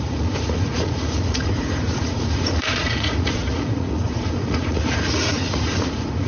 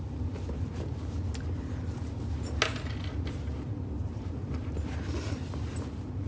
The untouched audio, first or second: second